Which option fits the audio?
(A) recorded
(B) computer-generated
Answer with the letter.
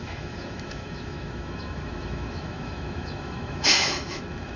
B